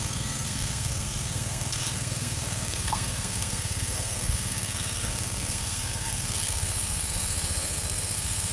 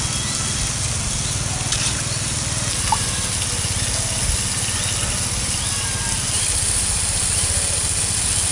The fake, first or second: first